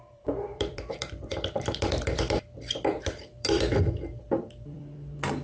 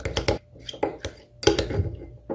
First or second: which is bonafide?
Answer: second